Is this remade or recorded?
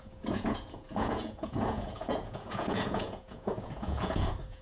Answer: remade